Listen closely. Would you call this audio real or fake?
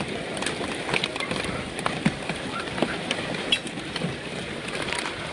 fake